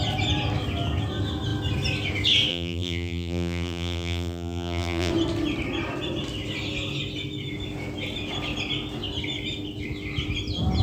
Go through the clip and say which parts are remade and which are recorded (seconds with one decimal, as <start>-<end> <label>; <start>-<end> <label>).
0.0-2.5 recorded; 2.5-5.1 remade; 5.1-10.8 recorded